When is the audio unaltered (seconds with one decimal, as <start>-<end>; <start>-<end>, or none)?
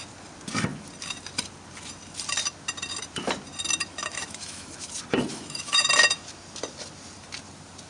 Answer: 0.0-3.9; 4.8-5.3; 5.9-7.9